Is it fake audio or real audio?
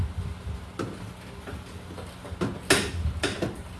real